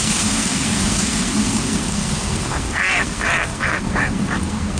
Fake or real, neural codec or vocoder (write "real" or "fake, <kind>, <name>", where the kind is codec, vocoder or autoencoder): fake, codec, SNAC